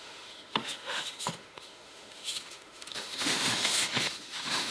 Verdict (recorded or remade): remade